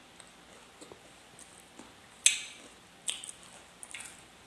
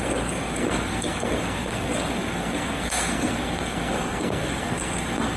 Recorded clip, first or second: first